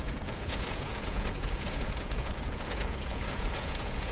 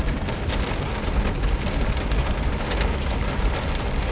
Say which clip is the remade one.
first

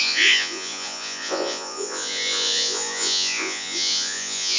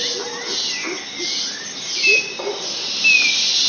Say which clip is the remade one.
first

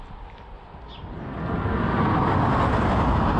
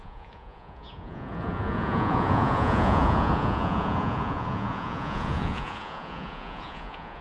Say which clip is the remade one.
second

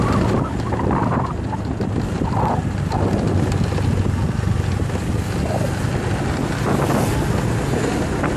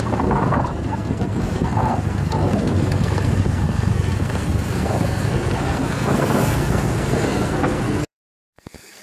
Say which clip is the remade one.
second